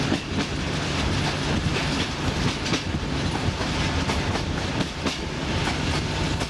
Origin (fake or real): real